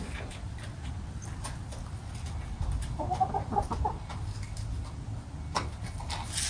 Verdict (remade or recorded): recorded